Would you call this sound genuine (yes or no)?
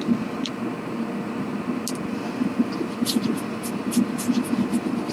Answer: yes